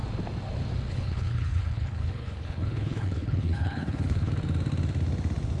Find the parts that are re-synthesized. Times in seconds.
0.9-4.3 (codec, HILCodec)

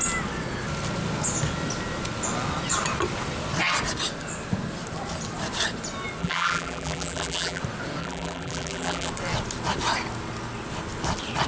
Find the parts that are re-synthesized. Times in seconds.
6.2-7.6 (vocoder, BigVGAN v2); 8.0-9.1

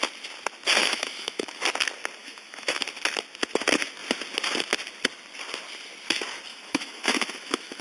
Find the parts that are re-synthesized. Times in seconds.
0.8-1.6 (autoencoder, DAC-VAE); 2.2-2.8; 6.5-7.8

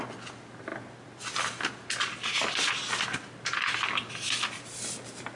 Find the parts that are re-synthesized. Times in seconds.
none

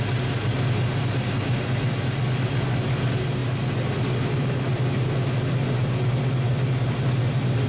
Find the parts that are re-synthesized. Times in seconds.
none

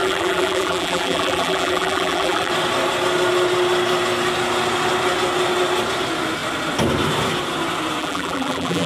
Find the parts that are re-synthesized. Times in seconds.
0.0-2.5 (vocoder, BigVGAN v2); 8.0-8.9

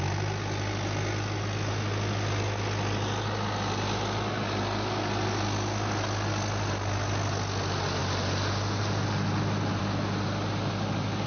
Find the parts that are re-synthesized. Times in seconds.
none